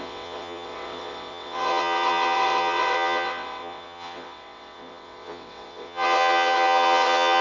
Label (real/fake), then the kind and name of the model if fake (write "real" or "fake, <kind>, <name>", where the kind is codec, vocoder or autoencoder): fake, vocoder, WaveNeXt